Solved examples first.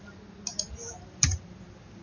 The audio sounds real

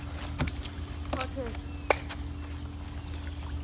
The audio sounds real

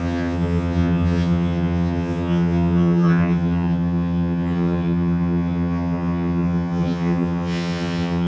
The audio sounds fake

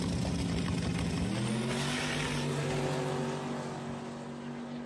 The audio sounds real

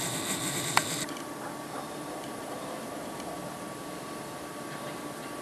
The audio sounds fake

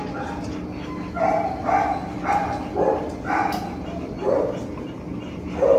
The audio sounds real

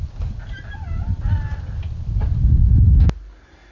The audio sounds real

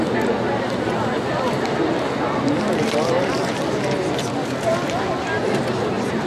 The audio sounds real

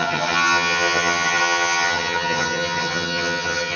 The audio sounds fake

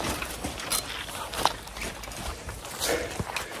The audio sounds real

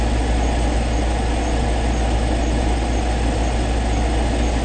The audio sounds real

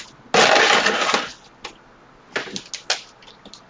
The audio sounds real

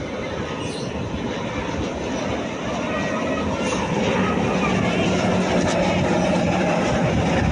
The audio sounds real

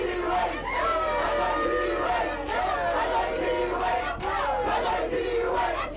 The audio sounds real